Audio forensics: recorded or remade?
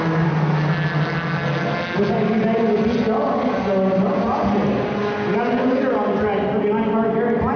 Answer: recorded